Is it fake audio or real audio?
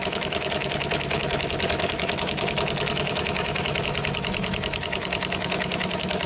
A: fake